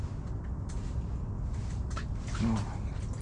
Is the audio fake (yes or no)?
no